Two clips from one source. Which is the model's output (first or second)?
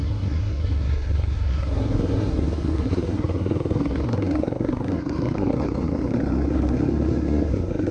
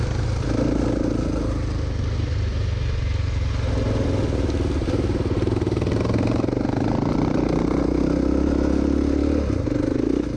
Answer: first